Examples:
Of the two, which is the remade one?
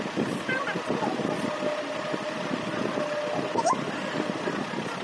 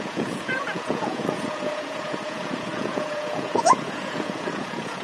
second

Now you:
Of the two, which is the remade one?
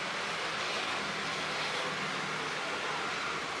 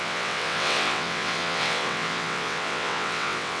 second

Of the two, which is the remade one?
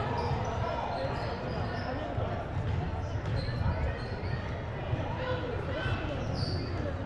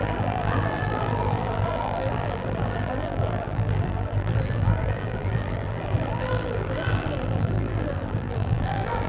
second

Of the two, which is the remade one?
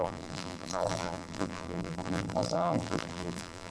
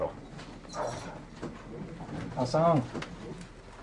first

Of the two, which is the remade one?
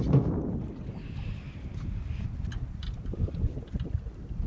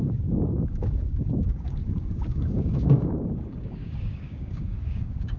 second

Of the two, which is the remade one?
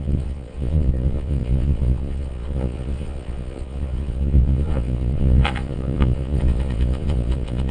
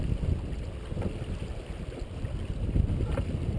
first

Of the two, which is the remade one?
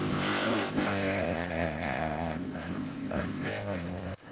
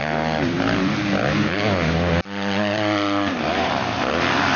first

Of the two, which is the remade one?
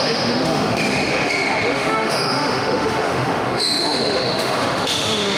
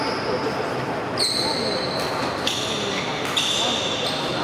first